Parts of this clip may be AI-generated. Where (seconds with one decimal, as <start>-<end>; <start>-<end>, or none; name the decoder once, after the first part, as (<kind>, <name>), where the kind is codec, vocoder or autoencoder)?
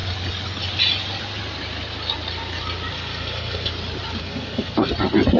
2.9-3.7 (codec, SNAC); 4.2-4.9